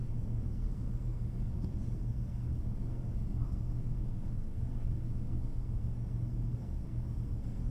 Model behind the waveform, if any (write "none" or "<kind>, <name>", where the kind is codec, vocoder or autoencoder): codec, SNAC